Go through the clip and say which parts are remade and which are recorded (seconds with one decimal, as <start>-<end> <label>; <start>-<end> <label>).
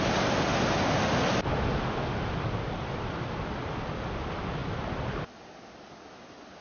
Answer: 0.0-6.6 recorded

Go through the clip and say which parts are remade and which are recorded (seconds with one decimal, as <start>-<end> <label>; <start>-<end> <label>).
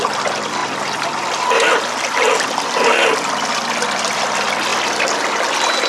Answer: 0.0-5.9 recorded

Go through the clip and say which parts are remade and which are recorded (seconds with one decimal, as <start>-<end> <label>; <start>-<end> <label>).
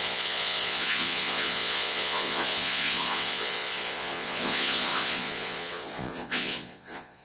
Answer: 0.0-7.2 remade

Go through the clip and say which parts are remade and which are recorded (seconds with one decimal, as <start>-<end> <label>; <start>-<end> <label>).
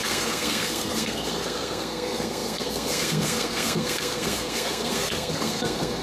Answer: 0.0-6.0 remade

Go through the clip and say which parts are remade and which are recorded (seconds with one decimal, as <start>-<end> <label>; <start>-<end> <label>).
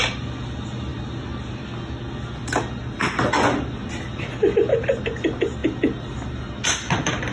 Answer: 0.0-7.3 recorded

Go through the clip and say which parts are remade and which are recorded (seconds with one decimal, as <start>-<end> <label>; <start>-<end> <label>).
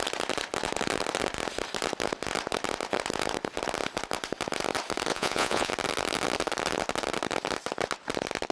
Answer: 0.0-5.1 recorded; 5.1-5.7 remade; 5.7-8.5 recorded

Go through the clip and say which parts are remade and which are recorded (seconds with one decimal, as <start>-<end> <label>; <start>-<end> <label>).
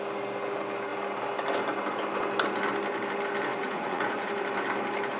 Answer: 0.0-3.5 recorded; 3.5-4.3 remade; 4.3-5.2 recorded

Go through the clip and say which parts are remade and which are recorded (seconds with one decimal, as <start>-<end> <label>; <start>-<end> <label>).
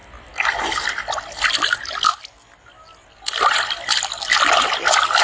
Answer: 0.0-5.2 recorded